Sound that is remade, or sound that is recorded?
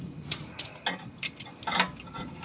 recorded